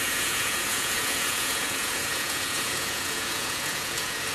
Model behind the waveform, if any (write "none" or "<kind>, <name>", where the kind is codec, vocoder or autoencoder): vocoder, Vocos